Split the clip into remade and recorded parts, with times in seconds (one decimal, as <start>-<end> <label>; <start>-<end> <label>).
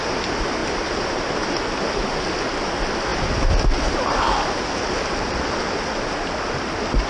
0.0-7.1 recorded